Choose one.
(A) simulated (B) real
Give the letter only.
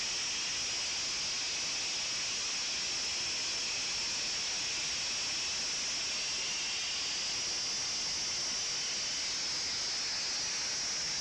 B